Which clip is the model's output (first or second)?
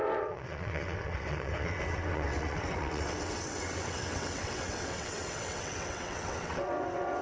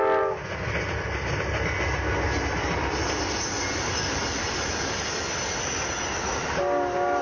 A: first